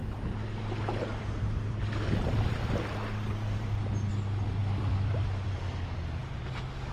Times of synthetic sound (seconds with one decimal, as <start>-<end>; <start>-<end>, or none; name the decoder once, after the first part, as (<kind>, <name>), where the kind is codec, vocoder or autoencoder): 0.0-4.1 (vocoder, BigVGAN v2); 4.6-5.6; 6.2-6.9